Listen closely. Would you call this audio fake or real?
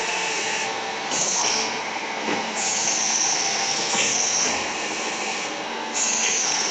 fake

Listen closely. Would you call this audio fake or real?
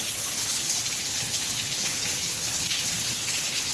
fake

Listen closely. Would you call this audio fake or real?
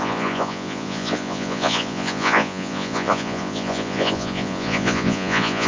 fake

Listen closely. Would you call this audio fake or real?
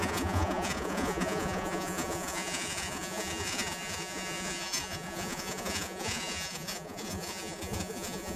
fake